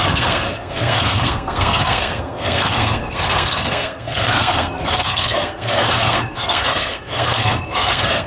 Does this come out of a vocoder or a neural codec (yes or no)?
yes